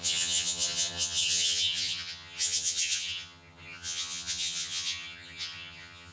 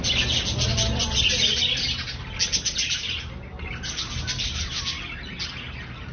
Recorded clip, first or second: second